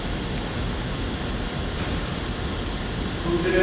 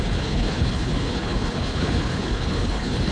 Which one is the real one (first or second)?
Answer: first